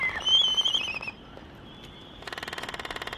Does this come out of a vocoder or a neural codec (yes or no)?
no